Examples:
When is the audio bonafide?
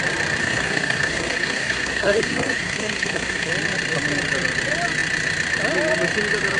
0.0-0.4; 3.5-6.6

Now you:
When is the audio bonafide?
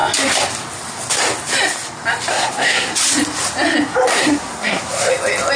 0.0-2.3; 2.9-4.1; 5.1-5.6